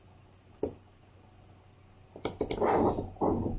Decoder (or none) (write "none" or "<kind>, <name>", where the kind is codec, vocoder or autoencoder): none